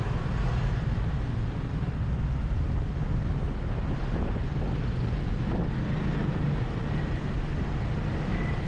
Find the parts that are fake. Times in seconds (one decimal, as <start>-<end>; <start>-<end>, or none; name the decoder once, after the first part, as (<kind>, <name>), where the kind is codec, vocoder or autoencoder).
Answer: none